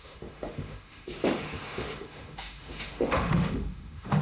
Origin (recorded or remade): remade